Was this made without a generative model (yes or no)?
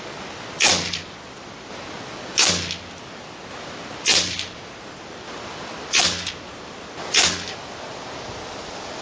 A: yes